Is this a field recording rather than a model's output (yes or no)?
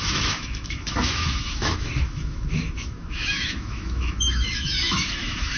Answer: no